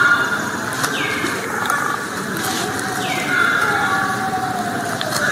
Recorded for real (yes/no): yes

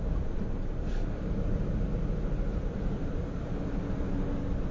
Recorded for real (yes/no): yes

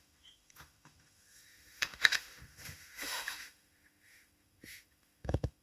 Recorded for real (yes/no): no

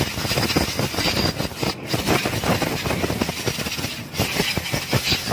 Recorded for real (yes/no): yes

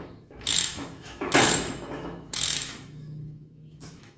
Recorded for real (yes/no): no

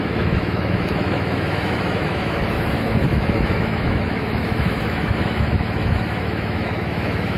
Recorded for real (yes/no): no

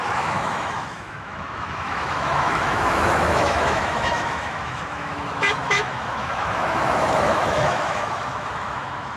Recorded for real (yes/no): no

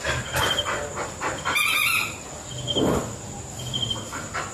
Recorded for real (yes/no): yes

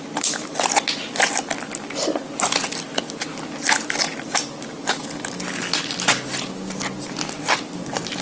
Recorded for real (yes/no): yes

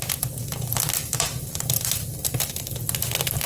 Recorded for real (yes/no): yes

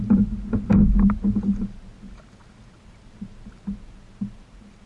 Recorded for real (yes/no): yes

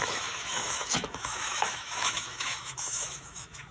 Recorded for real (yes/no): no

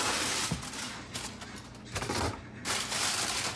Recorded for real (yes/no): yes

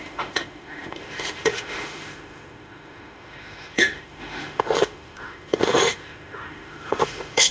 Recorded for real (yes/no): no